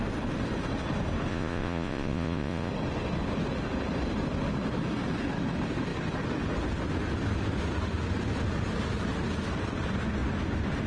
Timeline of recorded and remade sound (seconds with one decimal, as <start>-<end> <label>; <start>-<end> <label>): 0.0-1.3 recorded; 1.3-2.7 remade; 2.7-10.9 recorded